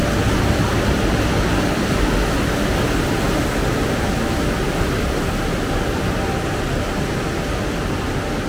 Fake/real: real